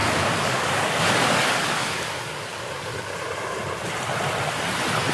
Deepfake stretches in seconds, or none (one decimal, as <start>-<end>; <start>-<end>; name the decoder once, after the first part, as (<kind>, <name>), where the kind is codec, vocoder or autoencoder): 0.0-3.1 (codec, DAC)